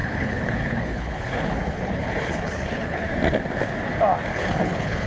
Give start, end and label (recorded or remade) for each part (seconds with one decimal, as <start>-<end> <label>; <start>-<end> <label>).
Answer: 0.0-3.1 remade; 3.1-4.3 recorded; 4.3-5.1 remade